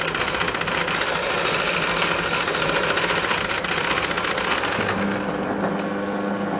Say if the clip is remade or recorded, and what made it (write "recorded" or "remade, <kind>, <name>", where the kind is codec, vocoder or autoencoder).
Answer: recorded